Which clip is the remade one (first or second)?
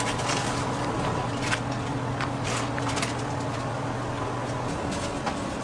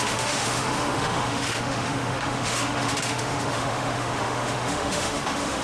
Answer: second